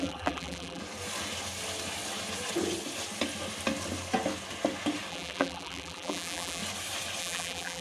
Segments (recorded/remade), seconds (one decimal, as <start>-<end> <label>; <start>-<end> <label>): 0.0-0.8 remade; 0.8-5.1 recorded; 5.1-6.6 remade; 6.6-7.2 recorded; 7.2-7.8 remade